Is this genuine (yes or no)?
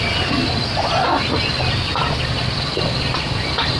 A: yes